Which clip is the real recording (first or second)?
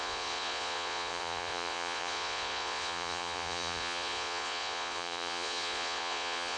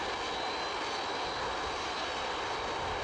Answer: second